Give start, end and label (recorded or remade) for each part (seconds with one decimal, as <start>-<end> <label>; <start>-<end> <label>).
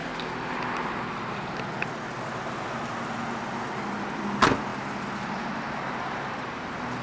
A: 0.0-7.0 recorded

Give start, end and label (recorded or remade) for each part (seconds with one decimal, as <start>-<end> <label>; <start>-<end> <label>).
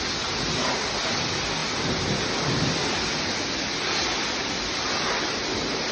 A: 0.0-5.9 recorded